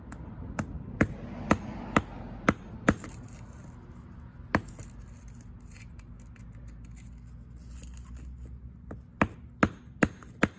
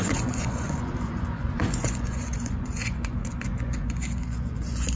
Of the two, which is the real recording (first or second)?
first